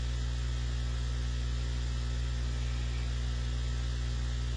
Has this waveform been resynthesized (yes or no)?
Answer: no